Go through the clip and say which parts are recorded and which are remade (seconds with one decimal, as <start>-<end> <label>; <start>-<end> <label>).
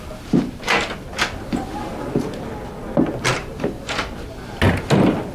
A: 0.0-3.4 recorded; 3.4-4.1 remade; 4.1-5.3 recorded